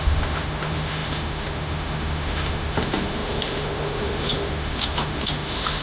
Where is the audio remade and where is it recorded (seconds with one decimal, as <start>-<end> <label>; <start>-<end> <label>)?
0.0-5.8 remade